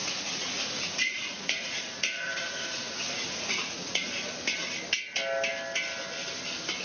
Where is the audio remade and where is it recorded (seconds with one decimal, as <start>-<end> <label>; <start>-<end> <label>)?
0.0-4.1 remade; 4.1-6.8 recorded